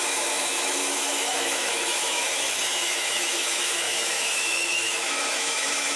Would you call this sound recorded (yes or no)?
no